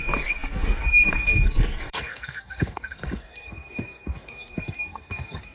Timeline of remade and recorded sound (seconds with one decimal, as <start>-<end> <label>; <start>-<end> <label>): 0.0-5.5 remade